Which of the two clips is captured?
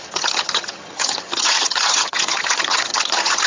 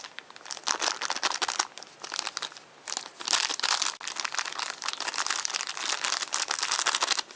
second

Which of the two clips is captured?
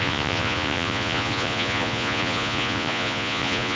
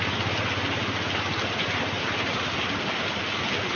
second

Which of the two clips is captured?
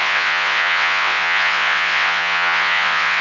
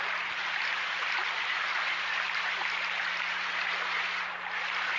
second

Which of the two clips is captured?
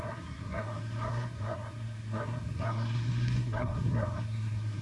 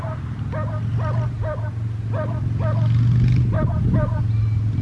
second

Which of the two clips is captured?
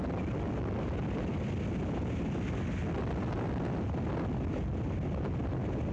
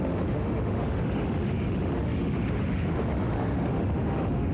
first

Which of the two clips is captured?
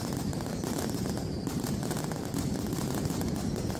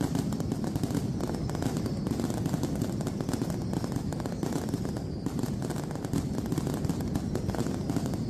second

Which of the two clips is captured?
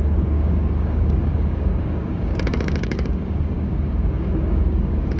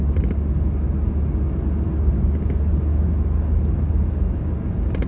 second